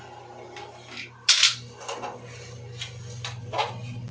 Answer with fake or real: real